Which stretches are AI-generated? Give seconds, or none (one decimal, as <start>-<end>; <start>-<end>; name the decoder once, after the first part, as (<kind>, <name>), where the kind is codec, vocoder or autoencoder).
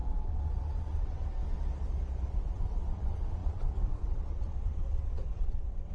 0.0-1.4 (vocoder, WaveNeXt); 2.3-5.9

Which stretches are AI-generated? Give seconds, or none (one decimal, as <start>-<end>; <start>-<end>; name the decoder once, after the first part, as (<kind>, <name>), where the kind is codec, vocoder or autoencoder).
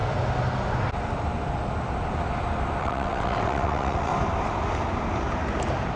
2.8-4.1 (vocoder, WaveNeXt)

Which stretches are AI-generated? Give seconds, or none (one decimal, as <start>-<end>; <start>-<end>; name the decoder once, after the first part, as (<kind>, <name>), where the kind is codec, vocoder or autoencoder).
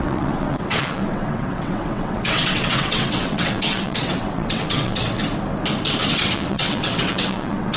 0.0-5.2 (vocoder, WaveNeXt); 6.1-7.8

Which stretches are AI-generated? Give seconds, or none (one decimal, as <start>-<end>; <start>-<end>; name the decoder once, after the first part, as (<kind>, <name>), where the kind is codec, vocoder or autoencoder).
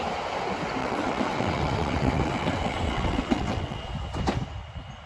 0.8-3.9 (vocoder, WaveNeXt)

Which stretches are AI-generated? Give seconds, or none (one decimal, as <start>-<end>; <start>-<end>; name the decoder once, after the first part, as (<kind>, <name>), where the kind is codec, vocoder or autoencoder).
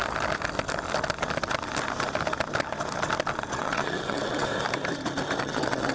3.5-4.5 (vocoder, WaveNeXt); 5.4-5.9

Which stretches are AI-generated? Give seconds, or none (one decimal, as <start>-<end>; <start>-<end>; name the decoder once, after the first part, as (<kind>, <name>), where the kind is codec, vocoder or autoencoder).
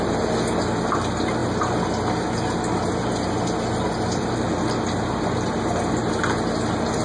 none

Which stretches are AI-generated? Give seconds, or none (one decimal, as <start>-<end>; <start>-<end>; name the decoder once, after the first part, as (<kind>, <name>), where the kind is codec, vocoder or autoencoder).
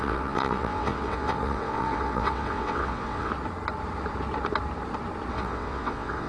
0.0-3.3 (vocoder, WaveNeXt); 5.3-6.3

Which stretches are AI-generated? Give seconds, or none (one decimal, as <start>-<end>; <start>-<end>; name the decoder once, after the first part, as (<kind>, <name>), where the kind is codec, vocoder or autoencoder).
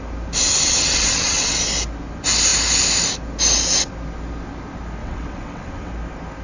0.4-1.5 (vocoder, WaveNeXt); 5.0-5.9